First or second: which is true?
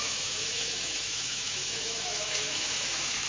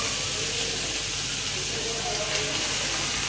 second